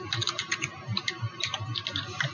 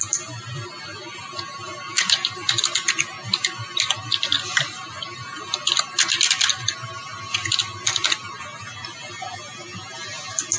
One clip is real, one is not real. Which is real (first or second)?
second